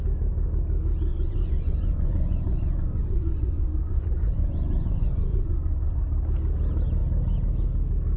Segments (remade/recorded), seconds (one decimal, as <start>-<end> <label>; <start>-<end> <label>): 0.0-1.1 recorded; 1.1-6.0 remade; 6.0-8.2 recorded